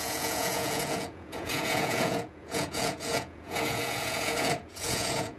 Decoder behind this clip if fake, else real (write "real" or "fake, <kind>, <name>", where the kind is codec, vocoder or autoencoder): fake, vocoder, Vocos